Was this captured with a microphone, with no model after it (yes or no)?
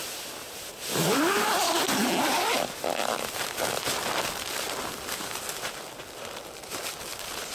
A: yes